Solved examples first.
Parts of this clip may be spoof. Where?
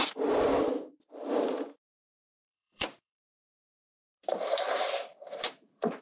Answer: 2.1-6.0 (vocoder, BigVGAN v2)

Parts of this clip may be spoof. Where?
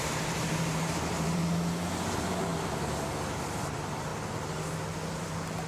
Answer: 0.0-1.4 (vocoder, BigVGAN v2); 1.9-2.5; 3.3-4.1; 5.2-5.7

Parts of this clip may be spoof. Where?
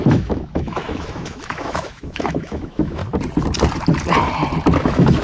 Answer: 0.0-3.0 (autoencoder, DAC-VAE); 4.8-5.2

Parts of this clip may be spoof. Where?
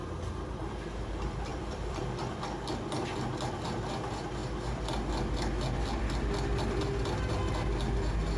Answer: 1.5-2.0 (vocoder, BigVGAN v2)